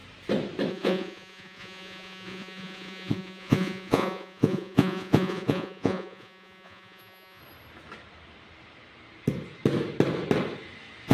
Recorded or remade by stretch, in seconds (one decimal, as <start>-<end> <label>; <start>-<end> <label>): 0.0-0.7 recorded; 0.7-7.4 remade; 7.4-11.1 recorded